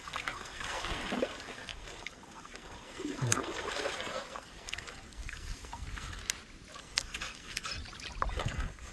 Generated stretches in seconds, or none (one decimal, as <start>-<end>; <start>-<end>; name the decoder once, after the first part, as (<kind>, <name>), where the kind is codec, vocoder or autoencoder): 0.0-6.2 (codec, SNAC); 6.8-7.7; 8.3-8.9